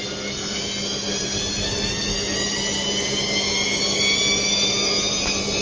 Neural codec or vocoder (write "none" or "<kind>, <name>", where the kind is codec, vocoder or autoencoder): none